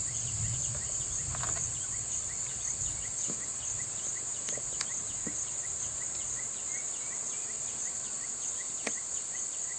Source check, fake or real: real